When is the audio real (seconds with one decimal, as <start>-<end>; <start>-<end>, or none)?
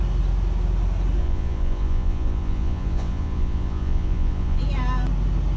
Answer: 0.0-1.2; 4.6-5.6